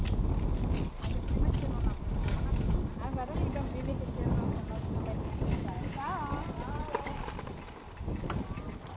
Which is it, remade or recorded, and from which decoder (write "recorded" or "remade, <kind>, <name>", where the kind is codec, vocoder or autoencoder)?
recorded